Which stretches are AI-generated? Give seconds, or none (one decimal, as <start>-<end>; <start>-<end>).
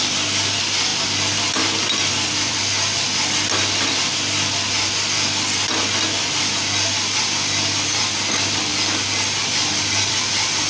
0.0-0.9; 2.1-8.7; 9.4-10.7